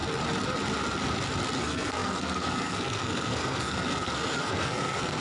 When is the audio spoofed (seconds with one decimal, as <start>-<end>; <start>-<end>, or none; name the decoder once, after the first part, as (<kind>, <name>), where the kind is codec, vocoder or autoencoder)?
1.6-5.2 (codec, SNAC)